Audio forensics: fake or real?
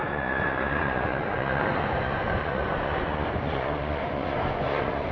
fake